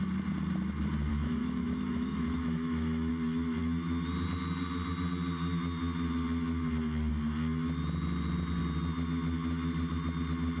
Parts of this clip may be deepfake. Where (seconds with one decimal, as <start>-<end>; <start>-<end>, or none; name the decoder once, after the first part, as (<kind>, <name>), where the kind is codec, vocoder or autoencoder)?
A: 1.1-3.1 (autoencoder, DAC-VAE)